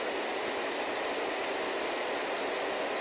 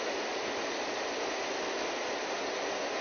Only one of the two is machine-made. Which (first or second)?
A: second